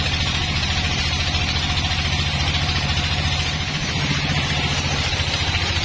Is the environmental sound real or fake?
fake